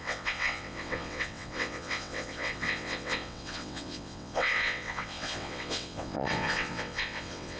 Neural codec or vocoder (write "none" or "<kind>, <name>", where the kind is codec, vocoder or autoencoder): vocoder, WaveNeXt